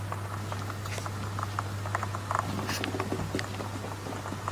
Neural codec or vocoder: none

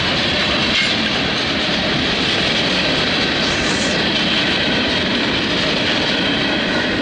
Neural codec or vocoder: vocoder, BigVGAN v2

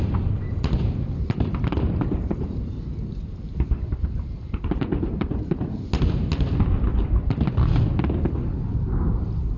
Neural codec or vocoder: none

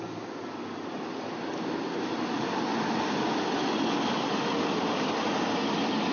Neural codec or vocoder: none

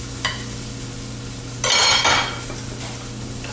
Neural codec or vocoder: none